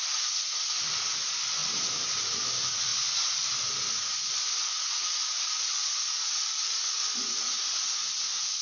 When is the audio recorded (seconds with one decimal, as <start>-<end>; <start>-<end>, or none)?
0.0-8.6